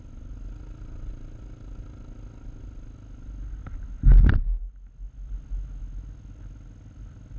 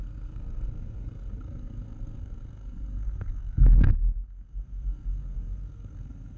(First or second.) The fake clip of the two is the second